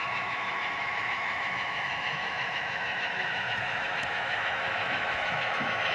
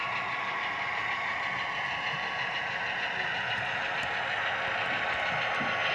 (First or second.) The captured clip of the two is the second